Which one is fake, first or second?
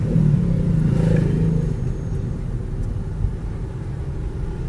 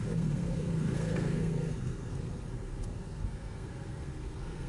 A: second